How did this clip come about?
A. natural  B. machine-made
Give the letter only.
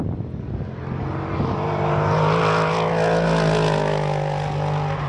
A